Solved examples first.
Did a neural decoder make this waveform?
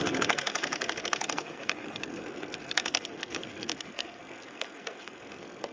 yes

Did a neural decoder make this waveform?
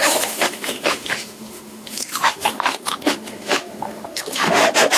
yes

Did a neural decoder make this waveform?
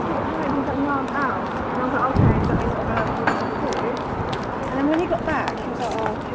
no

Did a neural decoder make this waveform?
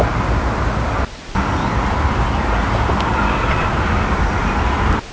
no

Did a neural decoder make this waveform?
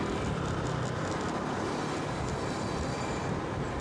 no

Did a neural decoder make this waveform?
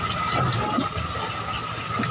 no